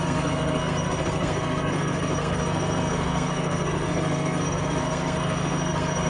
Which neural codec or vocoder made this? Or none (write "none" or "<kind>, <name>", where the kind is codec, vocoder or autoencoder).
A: codec, SNAC